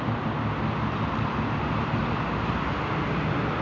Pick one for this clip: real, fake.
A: real